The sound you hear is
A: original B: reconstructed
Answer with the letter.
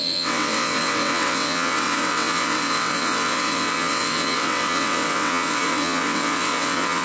B